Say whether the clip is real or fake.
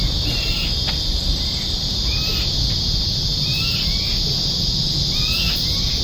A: real